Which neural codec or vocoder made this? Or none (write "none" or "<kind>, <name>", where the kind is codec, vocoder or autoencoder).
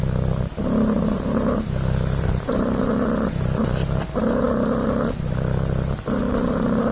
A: none